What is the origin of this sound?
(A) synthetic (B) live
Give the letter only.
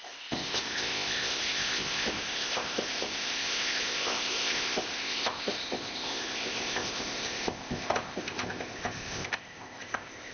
A